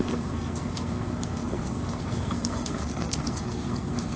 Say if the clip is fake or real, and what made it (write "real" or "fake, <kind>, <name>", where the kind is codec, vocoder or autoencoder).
fake, codec, SNAC